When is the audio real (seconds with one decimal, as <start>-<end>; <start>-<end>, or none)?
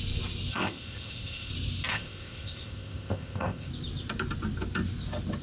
0.0-0.5; 1.5-1.9; 3.7-5.4